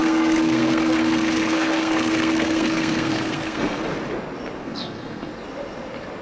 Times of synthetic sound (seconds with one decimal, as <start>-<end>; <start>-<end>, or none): 0.0-3.8; 4.6-5.3